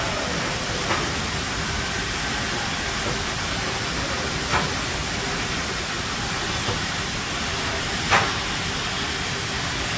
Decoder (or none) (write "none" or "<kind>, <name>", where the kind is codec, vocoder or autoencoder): none